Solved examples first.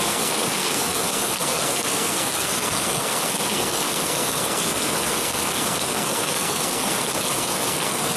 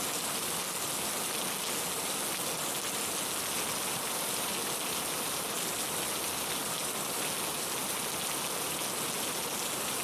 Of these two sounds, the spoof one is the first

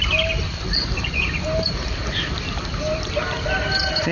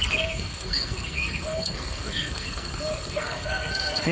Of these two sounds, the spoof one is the second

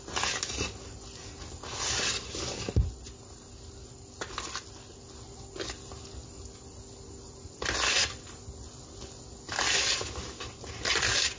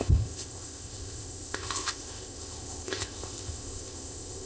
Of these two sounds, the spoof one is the second